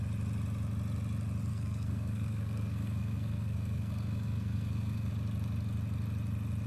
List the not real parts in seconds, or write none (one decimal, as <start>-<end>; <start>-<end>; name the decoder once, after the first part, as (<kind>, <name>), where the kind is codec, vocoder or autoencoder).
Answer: 1.5-5.1 (codec, SNAC)